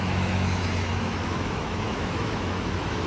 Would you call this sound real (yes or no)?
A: no